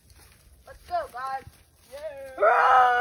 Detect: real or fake real